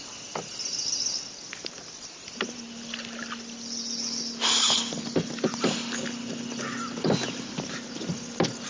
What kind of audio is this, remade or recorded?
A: recorded